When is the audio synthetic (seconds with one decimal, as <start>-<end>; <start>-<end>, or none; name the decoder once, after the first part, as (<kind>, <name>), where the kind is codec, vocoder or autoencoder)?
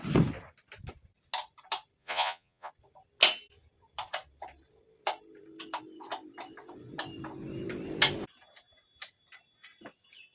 2.0-2.7 (vocoder, Vocos)